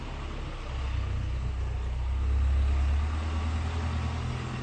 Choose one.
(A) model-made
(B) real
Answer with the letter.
B